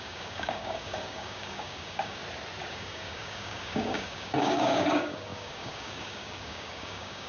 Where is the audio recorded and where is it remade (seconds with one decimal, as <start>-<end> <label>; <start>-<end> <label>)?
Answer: 0.0-2.2 remade; 2.2-2.7 recorded; 2.7-7.3 remade